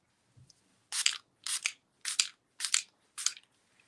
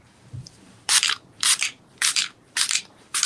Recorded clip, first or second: first